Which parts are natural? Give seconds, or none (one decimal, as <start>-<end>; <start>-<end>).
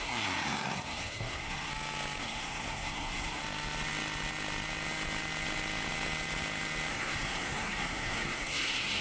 1.7-2.2; 3.4-6.9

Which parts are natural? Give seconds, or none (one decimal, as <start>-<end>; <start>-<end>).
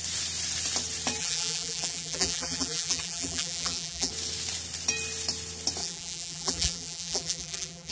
0.0-1.2; 4.1-5.8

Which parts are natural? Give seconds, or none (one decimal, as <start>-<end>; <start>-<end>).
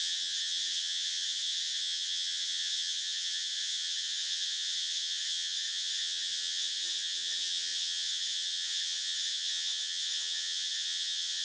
none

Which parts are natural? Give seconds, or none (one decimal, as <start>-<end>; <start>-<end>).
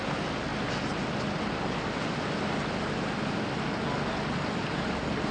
0.0-5.3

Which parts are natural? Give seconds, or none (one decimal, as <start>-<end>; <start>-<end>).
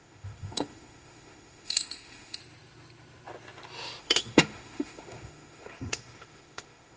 2.4-4.0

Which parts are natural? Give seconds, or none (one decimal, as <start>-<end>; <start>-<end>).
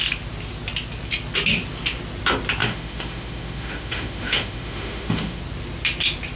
0.0-2.6; 5.4-6.4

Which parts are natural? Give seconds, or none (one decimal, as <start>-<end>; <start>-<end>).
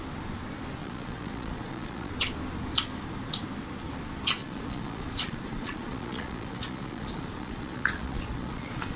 0.0-0.8; 2.1-4.4